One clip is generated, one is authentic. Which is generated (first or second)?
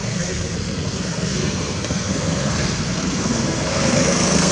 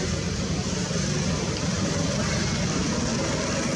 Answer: first